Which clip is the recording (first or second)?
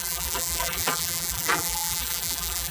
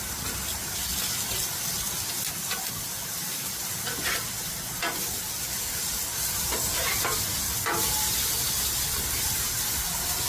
second